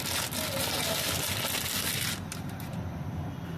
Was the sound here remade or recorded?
recorded